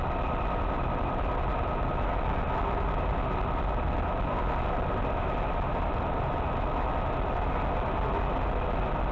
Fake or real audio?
real